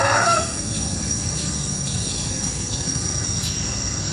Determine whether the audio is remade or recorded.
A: remade